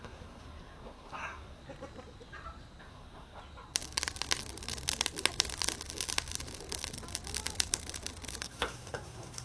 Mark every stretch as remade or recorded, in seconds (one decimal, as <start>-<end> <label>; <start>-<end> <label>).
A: 0.0-1.6 remade; 1.6-2.8 recorded; 2.8-3.4 remade; 3.4-8.4 recorded; 8.4-9.4 remade